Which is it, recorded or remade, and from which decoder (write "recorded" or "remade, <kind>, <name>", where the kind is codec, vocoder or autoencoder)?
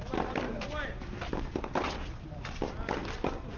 remade, vocoder, BigVGAN v2